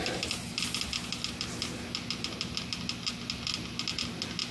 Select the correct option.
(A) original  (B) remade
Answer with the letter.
A